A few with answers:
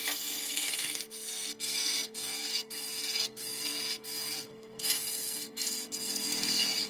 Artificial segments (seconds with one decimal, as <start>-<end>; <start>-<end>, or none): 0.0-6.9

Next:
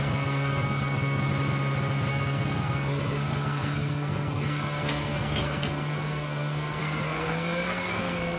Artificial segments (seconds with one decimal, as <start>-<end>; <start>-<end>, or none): 0.0-1.3; 2.1-8.4

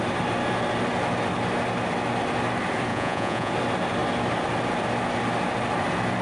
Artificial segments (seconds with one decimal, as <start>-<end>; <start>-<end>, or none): 2.9-3.5

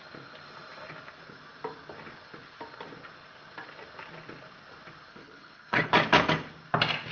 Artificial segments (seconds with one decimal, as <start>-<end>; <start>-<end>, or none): 5.1-5.9

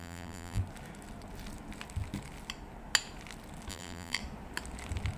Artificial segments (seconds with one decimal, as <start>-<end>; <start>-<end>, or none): 0.0-0.6; 3.7-4.2

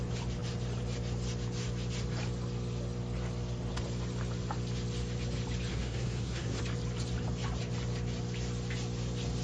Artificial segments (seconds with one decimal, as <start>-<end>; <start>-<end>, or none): 5.7-6.6

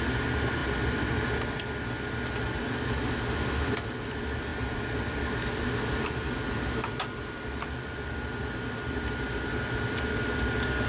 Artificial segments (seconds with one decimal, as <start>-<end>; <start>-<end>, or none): none